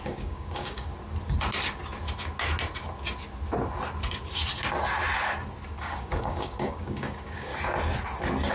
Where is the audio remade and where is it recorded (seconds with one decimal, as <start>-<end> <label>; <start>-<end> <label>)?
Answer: 0.0-0.9 remade; 0.9-5.8 recorded; 5.8-7.5 remade; 7.5-8.5 recorded